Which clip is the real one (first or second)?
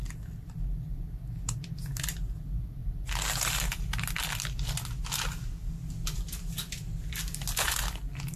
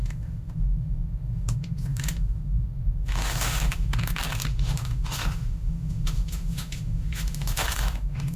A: first